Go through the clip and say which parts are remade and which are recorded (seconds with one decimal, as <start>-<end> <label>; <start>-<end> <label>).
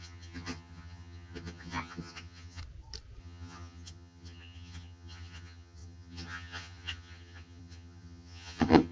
0.0-2.6 remade; 2.6-3.2 recorded; 3.2-8.9 remade